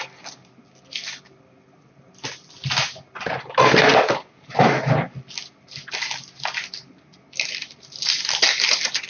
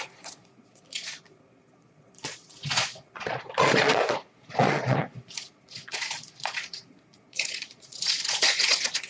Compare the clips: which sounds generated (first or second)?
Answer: second